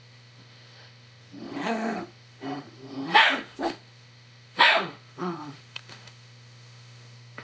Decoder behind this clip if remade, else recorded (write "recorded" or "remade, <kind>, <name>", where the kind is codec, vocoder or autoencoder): remade, autoencoder, DAC-VAE